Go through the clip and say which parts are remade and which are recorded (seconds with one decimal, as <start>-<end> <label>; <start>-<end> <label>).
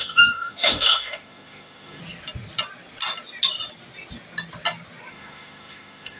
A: 0.0-2.0 remade; 2.0-5.1 recorded; 5.1-6.2 remade